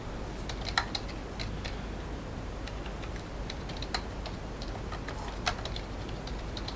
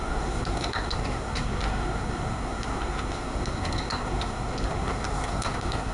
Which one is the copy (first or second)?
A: second